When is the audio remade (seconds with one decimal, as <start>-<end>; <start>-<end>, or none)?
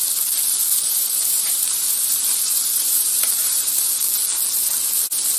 0.7-3.9